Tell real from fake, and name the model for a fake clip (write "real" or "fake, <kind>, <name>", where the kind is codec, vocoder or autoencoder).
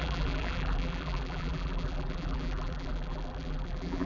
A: fake, vocoder, BigVGAN v2